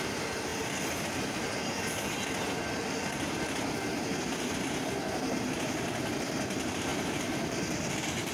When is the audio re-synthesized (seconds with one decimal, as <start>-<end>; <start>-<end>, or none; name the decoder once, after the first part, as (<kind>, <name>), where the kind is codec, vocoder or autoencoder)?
none